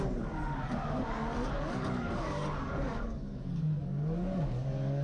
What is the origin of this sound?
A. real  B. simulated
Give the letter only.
B